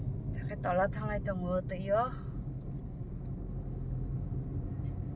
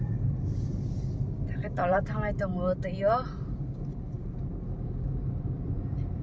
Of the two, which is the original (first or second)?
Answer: first